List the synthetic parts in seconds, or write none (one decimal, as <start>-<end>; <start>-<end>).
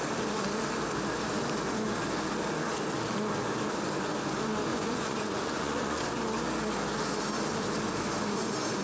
4.7-6.0